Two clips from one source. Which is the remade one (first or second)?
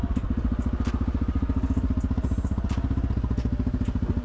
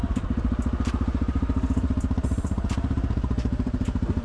second